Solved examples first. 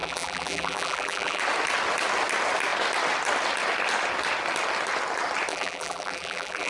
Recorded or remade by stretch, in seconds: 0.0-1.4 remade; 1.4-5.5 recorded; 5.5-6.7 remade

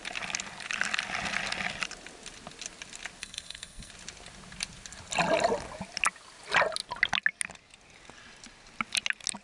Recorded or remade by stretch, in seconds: 0.0-3.2 recorded; 3.2-3.9 remade; 3.9-9.4 recorded